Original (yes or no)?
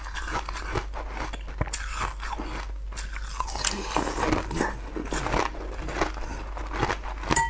yes